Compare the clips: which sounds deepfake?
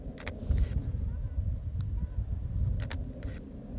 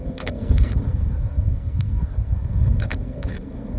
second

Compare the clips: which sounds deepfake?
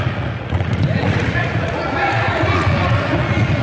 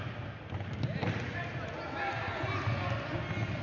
first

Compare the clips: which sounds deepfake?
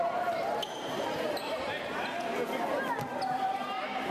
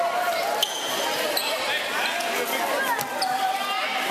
first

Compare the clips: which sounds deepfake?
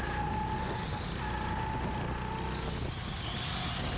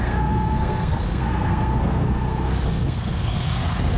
second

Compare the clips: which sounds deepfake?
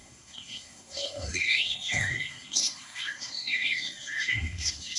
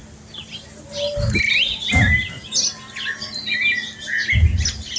first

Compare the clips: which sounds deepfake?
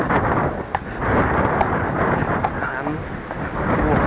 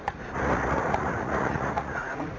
second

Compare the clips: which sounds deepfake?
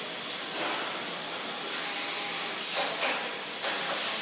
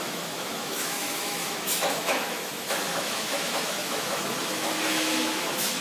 second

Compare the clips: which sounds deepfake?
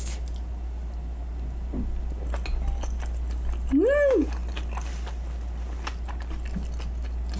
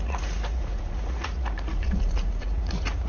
second